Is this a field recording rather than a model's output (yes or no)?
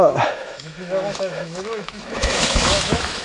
no